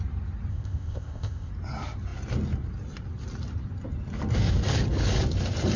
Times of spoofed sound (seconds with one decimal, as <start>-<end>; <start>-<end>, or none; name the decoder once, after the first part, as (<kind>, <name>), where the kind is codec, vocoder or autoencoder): 0.5-1.5 (codec, ZipCodec)